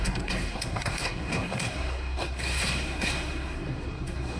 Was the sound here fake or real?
fake